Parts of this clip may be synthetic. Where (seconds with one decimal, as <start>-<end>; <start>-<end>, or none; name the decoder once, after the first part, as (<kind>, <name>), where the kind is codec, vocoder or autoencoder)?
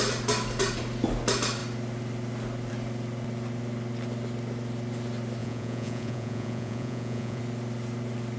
5.4-7.4 (vocoder, Vocos)